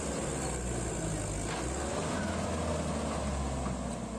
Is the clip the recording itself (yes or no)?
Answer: yes